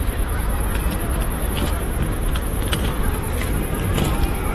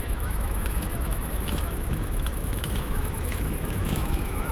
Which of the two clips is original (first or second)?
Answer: first